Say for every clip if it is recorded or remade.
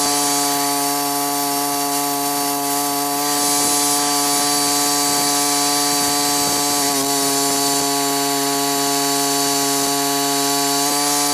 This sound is recorded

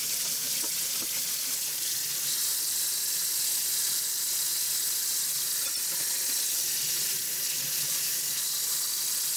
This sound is recorded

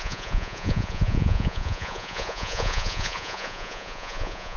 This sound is remade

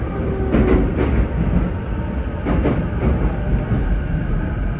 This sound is recorded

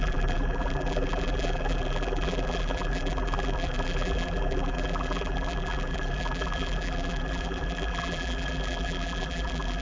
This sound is remade